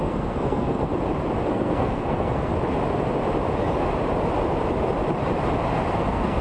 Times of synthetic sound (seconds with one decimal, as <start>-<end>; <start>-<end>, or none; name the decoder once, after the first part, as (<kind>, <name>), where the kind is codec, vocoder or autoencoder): 0.0-0.9 (codec, SNAC); 1.5-2.5; 5.9-6.4